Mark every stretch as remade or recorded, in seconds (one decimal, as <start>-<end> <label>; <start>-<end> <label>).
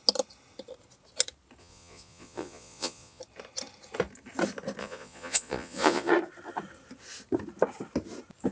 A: 0.0-1.6 recorded; 1.6-3.2 remade; 3.2-4.8 recorded; 4.8-6.1 remade; 6.1-8.5 recorded